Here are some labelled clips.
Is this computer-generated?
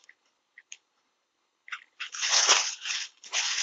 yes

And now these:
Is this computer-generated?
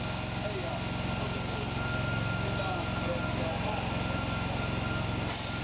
no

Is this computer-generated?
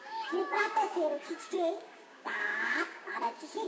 yes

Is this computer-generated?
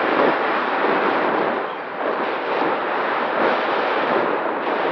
no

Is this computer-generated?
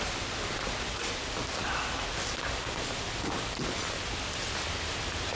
no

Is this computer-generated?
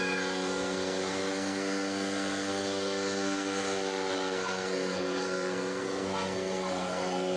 yes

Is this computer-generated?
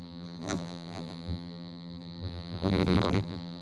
yes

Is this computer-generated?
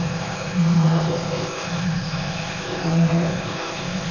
yes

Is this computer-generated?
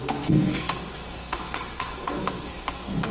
yes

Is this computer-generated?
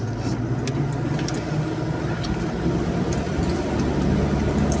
no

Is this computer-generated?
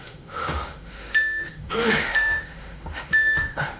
yes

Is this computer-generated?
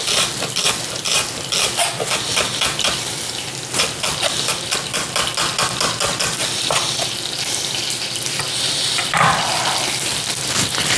no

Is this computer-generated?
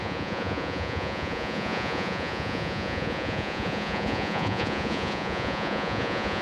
yes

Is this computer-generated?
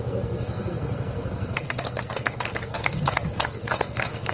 yes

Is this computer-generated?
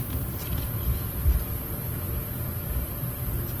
yes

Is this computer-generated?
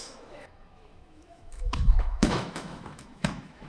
yes